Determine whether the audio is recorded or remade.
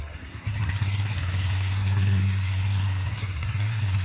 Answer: remade